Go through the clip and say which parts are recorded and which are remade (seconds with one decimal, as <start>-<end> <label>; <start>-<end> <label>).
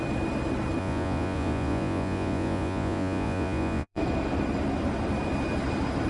0.0-0.8 recorded; 0.8-4.0 remade; 4.0-6.1 recorded